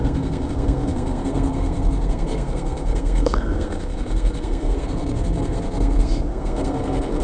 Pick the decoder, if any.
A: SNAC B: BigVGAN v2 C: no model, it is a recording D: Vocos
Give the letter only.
A